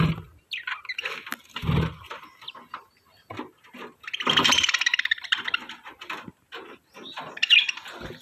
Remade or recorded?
recorded